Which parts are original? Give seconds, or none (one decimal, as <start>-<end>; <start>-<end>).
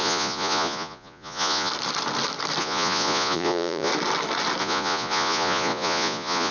1.7-2.6; 3.9-4.6